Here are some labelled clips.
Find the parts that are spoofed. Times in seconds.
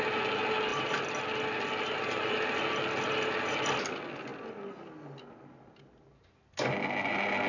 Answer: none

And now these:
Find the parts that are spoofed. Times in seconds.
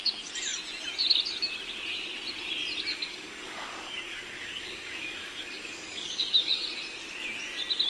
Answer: 2.9-6.6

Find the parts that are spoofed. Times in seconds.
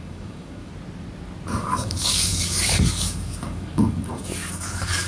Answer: 0.0-0.7; 1.6-5.1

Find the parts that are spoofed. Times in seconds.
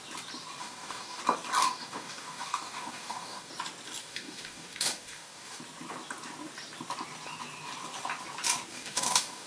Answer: 0.6-1.2; 1.6-3.5; 4.0-5.6; 8.7-9.5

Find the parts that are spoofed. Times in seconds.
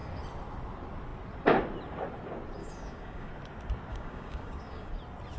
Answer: 2.6-3.3; 3.9-4.9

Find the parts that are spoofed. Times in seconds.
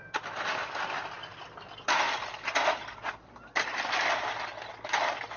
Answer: none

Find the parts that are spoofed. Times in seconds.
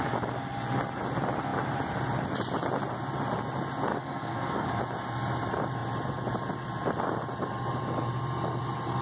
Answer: 3.9-4.8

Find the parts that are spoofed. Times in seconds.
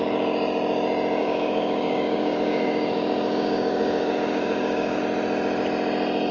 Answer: 1.2-5.0